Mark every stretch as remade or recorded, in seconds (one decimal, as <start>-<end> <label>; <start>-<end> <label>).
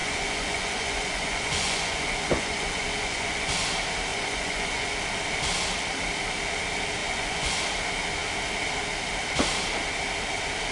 0.0-3.5 remade; 3.5-4.1 recorded; 4.1-4.9 remade; 4.9-7.0 recorded; 7.0-7.5 remade; 7.5-10.7 recorded